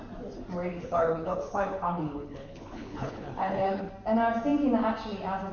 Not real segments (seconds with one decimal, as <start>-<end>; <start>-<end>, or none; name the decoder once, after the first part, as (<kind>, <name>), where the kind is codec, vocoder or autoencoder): 0.7-3.9 (codec, HILCodec)